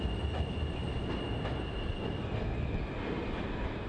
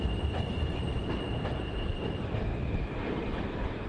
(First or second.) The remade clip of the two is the second